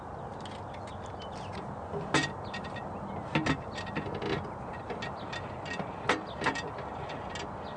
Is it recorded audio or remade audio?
recorded